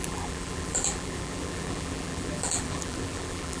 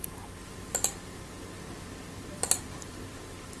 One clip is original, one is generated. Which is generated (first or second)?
first